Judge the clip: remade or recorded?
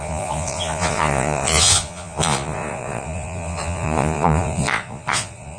remade